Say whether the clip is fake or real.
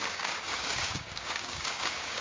fake